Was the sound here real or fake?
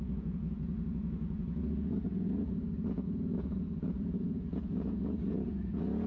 fake